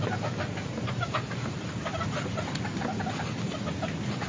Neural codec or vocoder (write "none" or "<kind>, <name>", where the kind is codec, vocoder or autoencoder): none